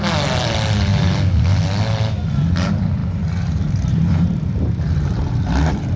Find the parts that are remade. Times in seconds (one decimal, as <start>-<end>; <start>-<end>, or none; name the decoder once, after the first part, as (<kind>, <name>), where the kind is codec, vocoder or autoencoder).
3.0-6.0 (vocoder, BigVGAN v2)